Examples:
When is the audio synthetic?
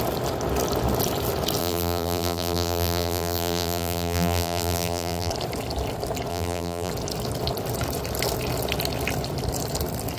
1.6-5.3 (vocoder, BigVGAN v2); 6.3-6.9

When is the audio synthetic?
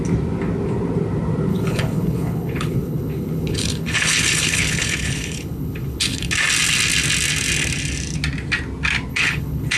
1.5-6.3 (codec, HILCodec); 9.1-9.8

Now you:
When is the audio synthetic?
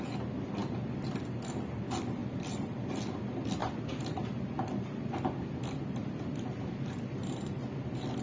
none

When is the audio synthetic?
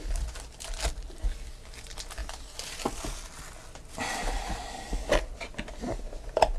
none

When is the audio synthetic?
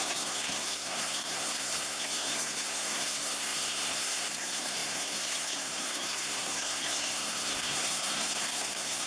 0.0-9.1 (codec, SNAC)